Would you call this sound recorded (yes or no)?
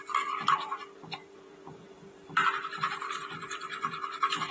no